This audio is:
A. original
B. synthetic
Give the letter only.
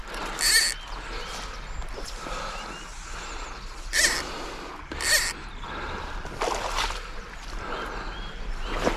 A